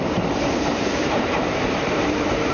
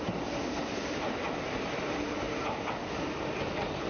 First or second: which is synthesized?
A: first